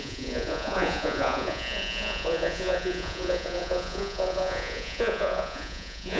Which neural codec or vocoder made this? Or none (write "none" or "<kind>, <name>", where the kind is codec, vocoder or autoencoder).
vocoder, Vocos